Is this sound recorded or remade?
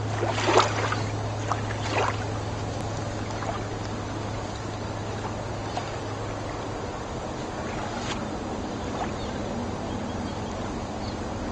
recorded